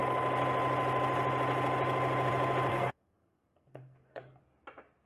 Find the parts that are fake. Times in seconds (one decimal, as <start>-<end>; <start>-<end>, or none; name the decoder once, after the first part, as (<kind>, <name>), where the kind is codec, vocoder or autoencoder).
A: 2.7-4.4 (codec, SNAC)